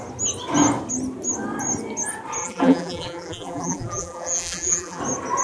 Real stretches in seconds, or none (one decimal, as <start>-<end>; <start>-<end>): 0.0-2.4; 5.0-5.4